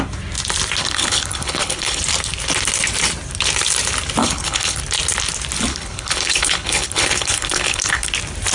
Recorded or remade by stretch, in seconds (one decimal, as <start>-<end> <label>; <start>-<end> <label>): 0.0-0.8 recorded; 0.8-2.0 remade; 2.0-4.2 recorded; 4.2-4.8 remade; 4.8-5.7 recorded; 5.7-8.1 remade; 8.1-8.5 recorded